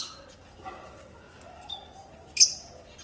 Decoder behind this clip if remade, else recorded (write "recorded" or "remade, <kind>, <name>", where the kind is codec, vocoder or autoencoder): recorded